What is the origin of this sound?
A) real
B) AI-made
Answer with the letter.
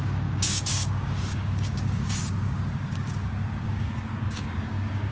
B